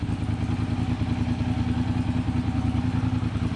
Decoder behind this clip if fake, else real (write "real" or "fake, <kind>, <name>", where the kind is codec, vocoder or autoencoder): real